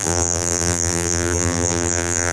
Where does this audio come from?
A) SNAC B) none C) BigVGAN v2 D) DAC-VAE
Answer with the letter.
C